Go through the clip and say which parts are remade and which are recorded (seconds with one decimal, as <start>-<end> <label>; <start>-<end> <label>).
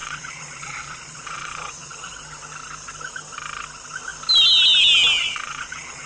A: 0.0-2.1 remade; 2.1-5.2 recorded; 5.2-6.1 remade